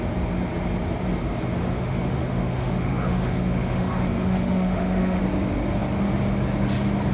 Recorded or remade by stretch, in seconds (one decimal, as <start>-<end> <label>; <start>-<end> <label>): 0.0-1.6 recorded; 1.6-5.2 remade; 5.2-7.1 recorded